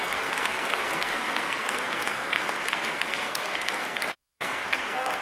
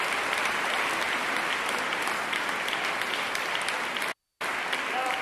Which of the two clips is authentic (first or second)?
second